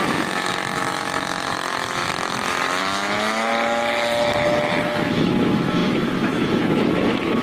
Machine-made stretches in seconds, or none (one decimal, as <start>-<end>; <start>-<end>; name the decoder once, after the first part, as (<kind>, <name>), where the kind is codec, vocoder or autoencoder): 0.0-2.1 (autoencoder, DAC-VAE); 2.8-3.5; 5.1-7.4